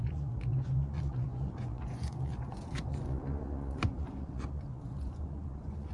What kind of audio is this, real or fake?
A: fake